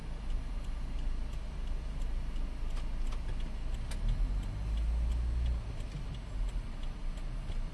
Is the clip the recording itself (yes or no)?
yes